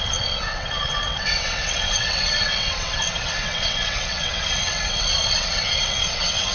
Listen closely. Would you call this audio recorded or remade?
remade